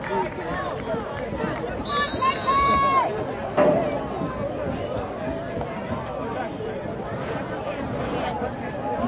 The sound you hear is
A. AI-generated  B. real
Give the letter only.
B